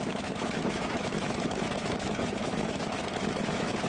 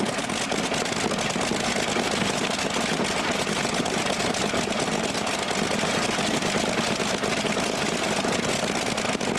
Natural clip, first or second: second